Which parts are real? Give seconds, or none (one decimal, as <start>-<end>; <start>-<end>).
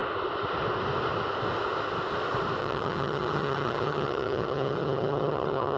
0.0-2.6